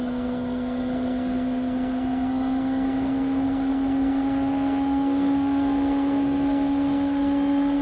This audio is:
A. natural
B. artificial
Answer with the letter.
B